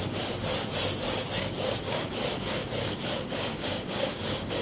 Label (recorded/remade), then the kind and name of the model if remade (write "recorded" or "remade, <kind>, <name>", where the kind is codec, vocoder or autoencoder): remade, codec, DAC